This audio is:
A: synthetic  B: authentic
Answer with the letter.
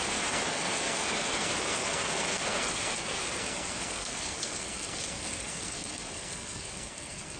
A